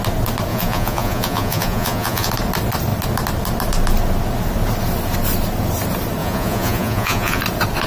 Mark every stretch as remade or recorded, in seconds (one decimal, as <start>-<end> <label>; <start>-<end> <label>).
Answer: 0.0-0.5 recorded; 0.5-2.3 remade; 2.3-6.2 recorded; 6.2-7.4 remade; 7.4-7.9 recorded